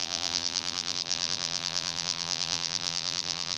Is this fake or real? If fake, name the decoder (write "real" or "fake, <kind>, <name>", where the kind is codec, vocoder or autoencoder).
fake, vocoder, BigVGAN v2